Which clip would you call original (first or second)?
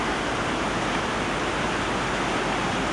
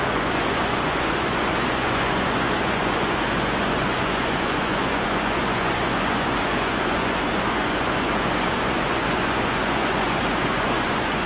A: first